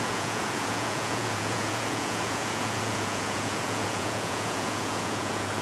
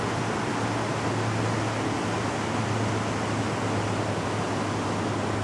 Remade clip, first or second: first